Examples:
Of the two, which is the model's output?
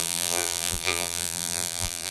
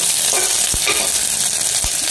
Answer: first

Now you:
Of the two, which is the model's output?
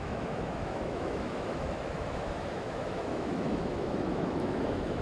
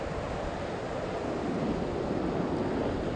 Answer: first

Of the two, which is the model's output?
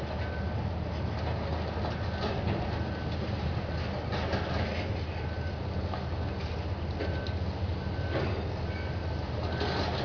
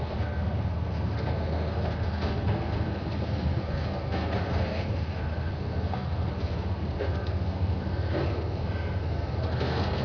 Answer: second